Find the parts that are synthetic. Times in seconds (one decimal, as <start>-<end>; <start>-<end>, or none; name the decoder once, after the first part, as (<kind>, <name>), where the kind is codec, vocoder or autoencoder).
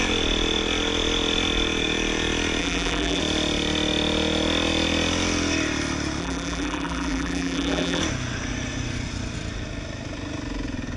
2.6-3.2 (vocoder, BigVGAN v2); 6.2-8.0